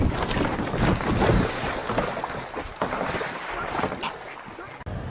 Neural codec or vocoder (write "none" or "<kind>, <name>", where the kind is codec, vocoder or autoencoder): none